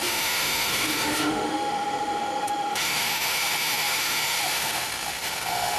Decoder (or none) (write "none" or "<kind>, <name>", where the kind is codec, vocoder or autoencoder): autoencoder, DAC-VAE